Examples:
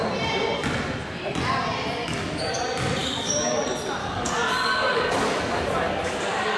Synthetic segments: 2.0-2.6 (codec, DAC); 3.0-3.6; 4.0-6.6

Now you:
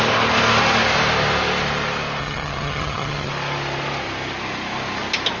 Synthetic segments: 2.2-3.3 (vocoder, HiFi-GAN)